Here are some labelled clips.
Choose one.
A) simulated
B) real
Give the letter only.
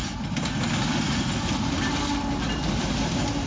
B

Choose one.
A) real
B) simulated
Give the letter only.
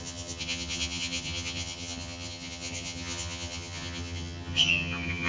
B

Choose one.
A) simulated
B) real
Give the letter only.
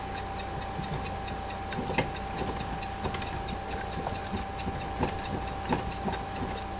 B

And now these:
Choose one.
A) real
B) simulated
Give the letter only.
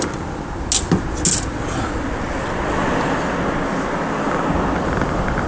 A